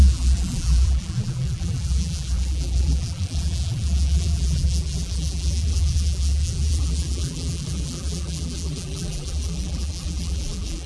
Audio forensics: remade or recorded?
remade